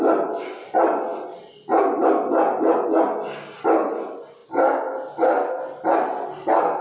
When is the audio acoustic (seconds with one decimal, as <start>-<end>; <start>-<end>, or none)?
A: 0.0-6.8